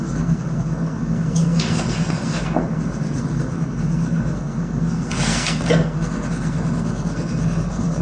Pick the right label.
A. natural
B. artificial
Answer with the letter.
B